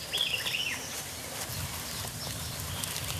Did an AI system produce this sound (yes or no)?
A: yes